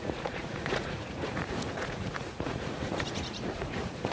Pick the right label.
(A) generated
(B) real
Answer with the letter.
A